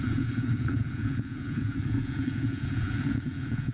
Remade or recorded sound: remade